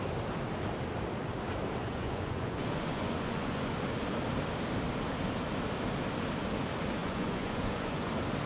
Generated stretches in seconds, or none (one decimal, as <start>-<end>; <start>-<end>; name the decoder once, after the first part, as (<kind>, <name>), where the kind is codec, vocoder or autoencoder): 1.8-3.7 (vocoder, Vocos); 7.0-8.1